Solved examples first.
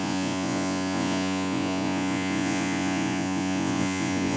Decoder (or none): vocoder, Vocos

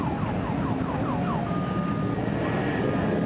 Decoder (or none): none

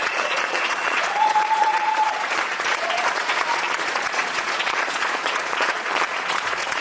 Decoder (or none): vocoder, Vocos